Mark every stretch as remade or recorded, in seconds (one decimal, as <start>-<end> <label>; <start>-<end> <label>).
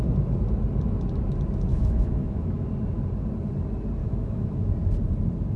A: 0.0-1.7 recorded; 1.7-2.7 remade; 2.7-4.0 recorded; 4.0-4.7 remade; 4.7-5.6 recorded